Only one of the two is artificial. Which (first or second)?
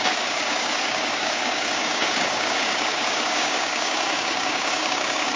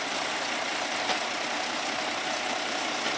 first